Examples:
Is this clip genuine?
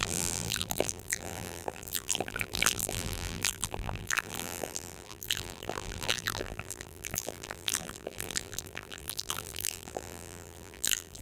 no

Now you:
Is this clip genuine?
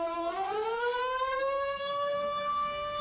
no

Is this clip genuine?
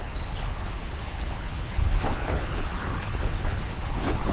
no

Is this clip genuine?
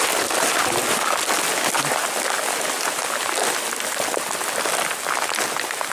yes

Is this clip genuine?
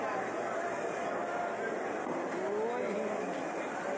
yes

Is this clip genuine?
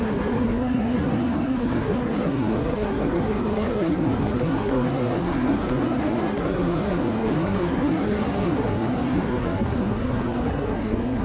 no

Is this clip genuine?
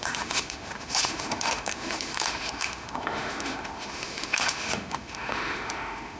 no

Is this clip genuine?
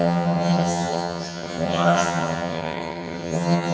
no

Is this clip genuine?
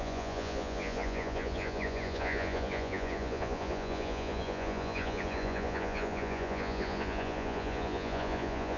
no